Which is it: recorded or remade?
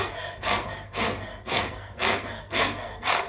remade